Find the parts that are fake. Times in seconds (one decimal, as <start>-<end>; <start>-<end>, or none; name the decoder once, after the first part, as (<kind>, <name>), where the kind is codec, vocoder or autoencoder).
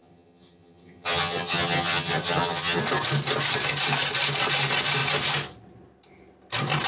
0.0-2.8 (vocoder, HiFi-GAN)